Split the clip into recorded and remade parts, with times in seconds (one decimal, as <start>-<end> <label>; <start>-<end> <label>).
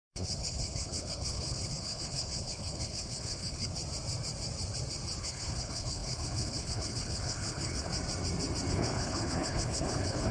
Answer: 0.0-3.8 remade; 3.8-5.2 recorded; 5.2-7.9 remade; 7.9-8.7 recorded; 8.7-10.3 remade